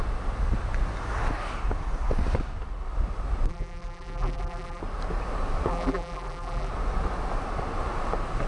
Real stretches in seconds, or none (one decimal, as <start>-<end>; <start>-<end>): 0.0-3.5; 4.8-5.7; 6.7-8.5